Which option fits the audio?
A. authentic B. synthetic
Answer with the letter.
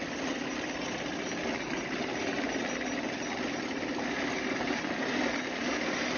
A